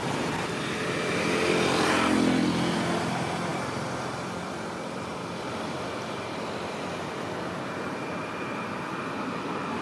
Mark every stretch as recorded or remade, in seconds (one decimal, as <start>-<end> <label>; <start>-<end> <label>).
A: 0.0-3.5 recorded; 3.5-7.0 remade; 7.0-8.2 recorded; 8.2-9.8 remade